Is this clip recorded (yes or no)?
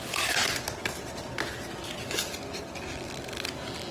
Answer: yes